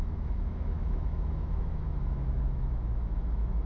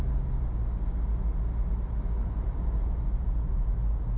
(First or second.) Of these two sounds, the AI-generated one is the first